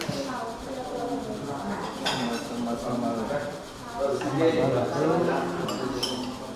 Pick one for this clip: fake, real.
real